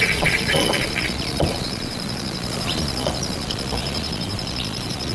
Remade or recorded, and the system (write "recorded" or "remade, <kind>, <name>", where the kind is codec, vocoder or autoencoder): remade, vocoder, Vocos